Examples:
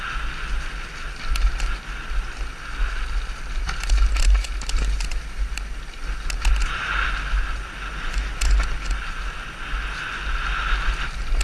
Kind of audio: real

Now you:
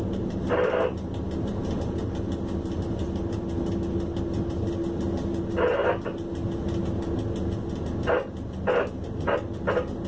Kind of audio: real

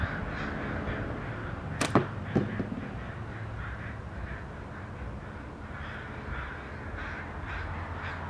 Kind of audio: real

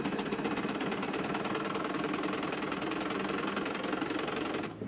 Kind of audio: real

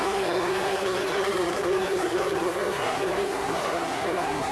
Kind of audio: fake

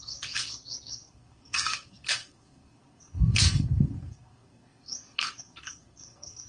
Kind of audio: fake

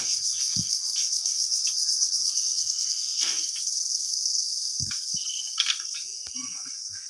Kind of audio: fake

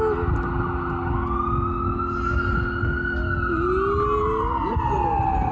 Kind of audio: real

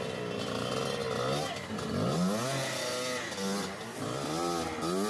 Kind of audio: real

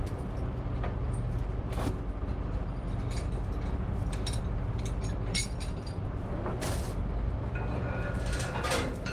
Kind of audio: real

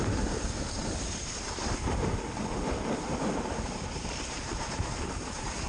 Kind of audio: real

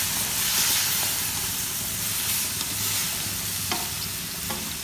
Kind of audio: real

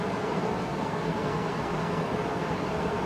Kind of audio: fake